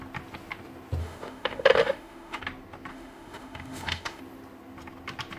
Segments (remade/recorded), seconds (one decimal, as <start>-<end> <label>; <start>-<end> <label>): 0.0-1.0 recorded; 1.0-2.4 remade; 2.4-2.9 recorded; 2.9-4.2 remade; 4.2-5.4 recorded